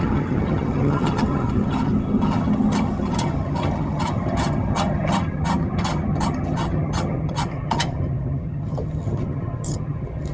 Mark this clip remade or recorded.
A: remade